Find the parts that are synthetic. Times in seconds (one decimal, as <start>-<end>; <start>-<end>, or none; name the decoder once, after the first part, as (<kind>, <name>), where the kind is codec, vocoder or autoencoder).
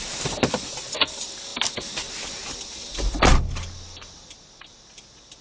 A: none